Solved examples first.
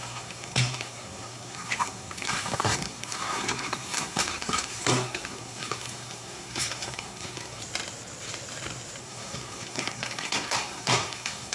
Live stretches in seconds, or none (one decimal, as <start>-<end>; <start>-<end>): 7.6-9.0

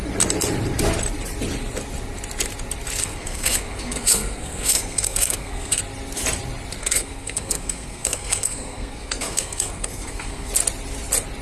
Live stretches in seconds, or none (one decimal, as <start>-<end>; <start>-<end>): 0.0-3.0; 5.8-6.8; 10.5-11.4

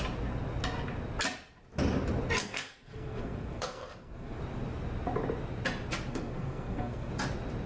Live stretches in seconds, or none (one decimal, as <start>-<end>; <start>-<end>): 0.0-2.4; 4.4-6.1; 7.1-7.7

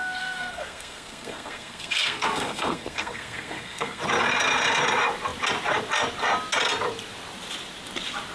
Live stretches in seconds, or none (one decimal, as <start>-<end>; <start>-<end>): 4.0-8.3

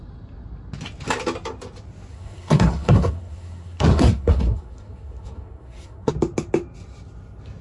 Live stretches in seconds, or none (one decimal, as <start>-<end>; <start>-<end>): 0.0-2.1; 6.1-7.6